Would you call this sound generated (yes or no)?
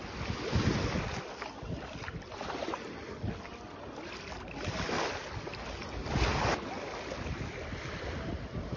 no